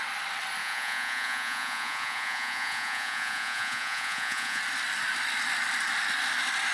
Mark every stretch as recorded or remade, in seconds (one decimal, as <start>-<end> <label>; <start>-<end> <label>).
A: 0.0-0.6 recorded; 0.6-4.6 remade; 4.6-6.7 recorded